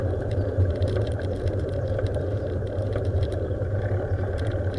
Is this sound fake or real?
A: fake